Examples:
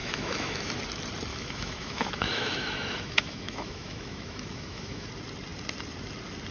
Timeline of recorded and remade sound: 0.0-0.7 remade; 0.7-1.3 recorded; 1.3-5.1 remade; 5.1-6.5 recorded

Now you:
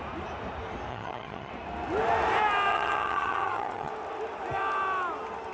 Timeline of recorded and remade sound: 0.0-0.9 recorded; 0.9-1.5 remade; 1.5-2.7 recorded; 2.7-3.9 remade; 3.9-5.5 recorded

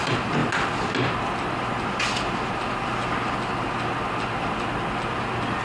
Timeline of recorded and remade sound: 0.0-5.6 recorded

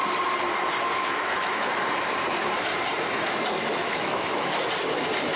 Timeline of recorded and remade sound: 0.0-0.7 recorded; 0.7-1.7 remade; 1.7-3.8 recorded; 3.8-4.7 remade; 4.7-5.4 recorded

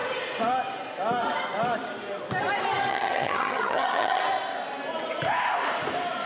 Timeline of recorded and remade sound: 0.0-2.9 recorded; 2.9-4.2 remade; 4.2-6.3 recorded

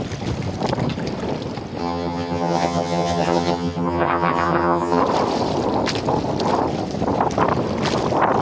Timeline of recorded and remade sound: 0.0-1.8 recorded; 1.8-5.0 remade; 5.0-8.4 recorded